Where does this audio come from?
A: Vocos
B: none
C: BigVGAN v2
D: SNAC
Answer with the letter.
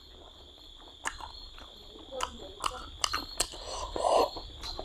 B